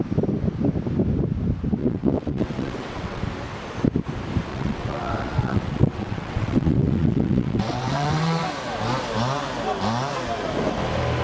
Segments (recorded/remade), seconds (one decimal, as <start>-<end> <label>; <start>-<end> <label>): 0.0-1.8 recorded; 1.8-3.2 remade; 3.2-4.5 recorded; 4.5-8.4 remade; 8.4-11.2 recorded